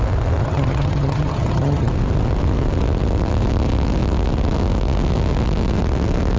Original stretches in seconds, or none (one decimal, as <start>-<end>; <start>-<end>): 0.0-0.4; 1.9-6.4